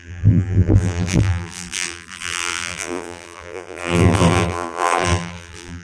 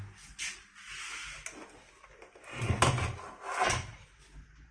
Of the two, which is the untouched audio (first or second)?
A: second